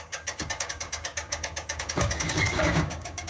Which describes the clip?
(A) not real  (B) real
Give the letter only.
A